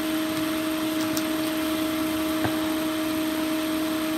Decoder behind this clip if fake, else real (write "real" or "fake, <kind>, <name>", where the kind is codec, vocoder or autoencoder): real